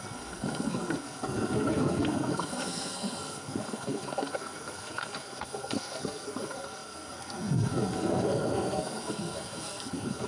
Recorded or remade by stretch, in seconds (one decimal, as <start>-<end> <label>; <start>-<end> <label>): 0.0-10.3 remade